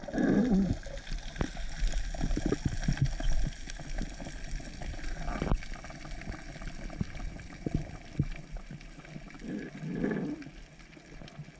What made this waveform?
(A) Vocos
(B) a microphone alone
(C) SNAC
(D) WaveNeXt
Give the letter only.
B